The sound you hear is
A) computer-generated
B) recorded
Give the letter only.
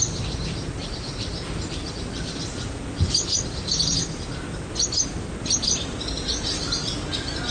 B